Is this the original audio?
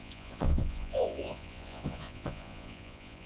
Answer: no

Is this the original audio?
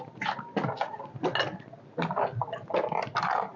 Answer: yes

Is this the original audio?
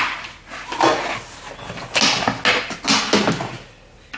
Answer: yes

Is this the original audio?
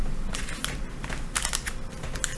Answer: yes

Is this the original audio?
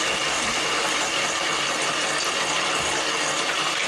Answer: yes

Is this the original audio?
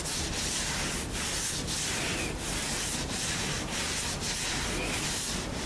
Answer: yes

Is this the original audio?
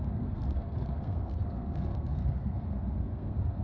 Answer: no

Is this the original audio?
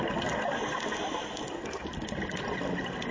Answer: yes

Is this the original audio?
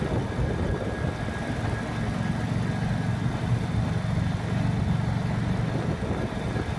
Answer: yes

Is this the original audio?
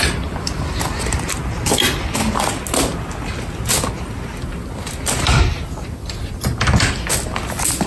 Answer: yes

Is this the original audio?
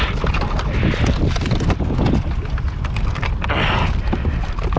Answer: yes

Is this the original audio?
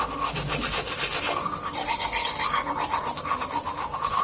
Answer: yes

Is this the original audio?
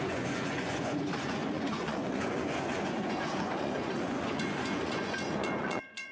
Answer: no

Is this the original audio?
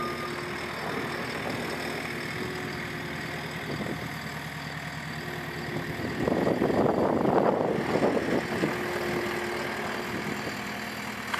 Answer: yes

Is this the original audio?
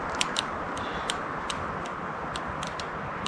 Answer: yes